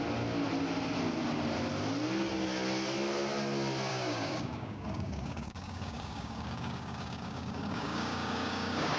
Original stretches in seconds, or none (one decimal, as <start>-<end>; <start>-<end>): 0.0-3.9